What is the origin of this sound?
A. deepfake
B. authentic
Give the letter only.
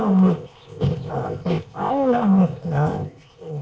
A